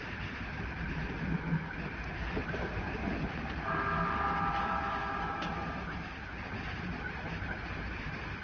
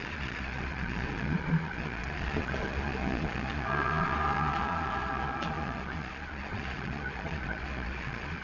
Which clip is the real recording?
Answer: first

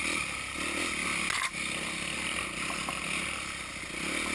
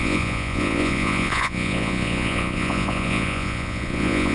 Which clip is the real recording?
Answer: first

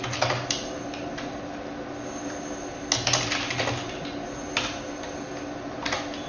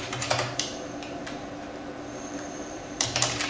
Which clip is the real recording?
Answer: first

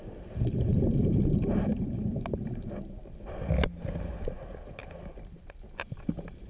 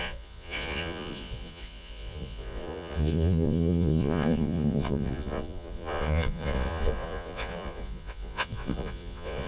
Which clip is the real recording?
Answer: first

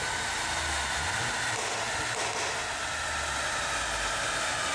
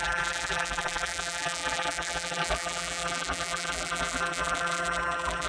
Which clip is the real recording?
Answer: first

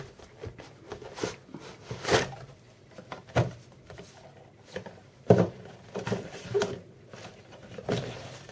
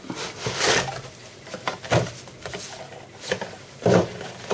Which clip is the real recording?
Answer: second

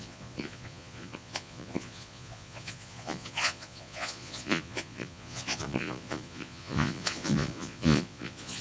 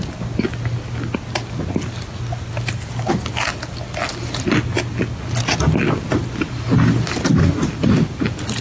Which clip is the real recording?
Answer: second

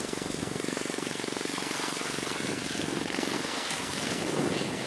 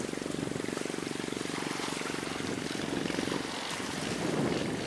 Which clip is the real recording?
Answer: second